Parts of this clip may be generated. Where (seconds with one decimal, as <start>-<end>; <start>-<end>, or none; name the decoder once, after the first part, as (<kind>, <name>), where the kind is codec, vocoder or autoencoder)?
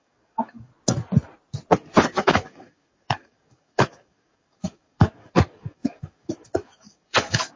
0.0-0.7 (codec, DAC); 2.0-7.6